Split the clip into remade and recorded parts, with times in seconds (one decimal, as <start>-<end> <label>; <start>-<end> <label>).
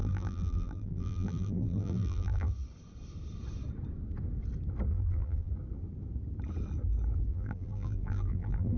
0.0-2.5 remade; 2.5-4.9 recorded; 4.9-5.5 remade; 5.5-7.3 recorded; 7.3-8.8 remade